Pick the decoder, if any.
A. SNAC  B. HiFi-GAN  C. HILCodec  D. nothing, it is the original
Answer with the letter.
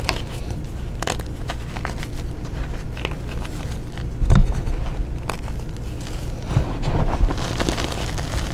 D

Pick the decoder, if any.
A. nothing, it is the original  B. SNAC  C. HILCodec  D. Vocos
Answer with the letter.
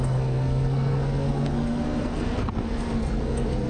B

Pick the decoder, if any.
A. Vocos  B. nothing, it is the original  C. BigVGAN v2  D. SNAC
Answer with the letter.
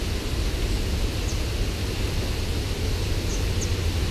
B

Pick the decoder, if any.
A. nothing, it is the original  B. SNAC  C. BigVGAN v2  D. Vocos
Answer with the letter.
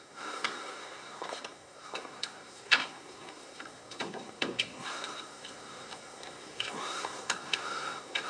B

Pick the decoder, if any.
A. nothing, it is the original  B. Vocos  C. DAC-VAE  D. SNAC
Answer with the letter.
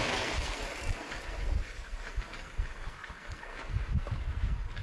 D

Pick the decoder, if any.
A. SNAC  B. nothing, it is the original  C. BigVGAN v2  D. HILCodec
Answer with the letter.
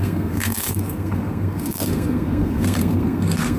A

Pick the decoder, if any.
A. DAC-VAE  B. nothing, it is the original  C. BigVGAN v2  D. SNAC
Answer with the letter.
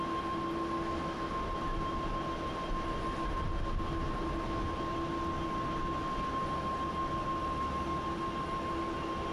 B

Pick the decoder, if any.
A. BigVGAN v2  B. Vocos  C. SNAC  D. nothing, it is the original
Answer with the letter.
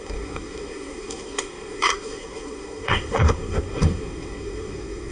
C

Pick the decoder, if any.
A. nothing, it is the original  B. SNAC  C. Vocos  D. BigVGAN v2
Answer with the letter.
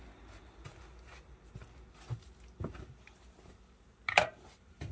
A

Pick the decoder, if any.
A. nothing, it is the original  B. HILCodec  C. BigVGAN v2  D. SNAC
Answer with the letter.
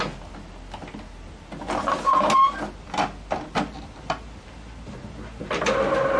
A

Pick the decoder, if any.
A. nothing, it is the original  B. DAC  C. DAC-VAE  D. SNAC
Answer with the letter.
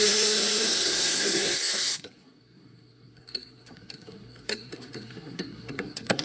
D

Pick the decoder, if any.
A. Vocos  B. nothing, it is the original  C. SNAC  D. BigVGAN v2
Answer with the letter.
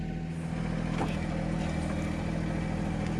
B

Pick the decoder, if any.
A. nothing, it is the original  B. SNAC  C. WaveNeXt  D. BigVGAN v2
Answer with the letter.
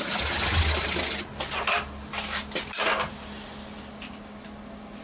A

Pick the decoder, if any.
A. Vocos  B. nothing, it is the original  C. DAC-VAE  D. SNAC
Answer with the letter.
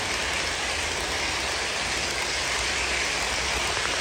B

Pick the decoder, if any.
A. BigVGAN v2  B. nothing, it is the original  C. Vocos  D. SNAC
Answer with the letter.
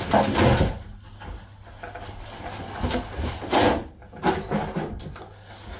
B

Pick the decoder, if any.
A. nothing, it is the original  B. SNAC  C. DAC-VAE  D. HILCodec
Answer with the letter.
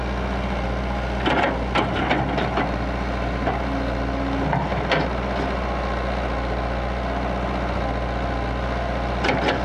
A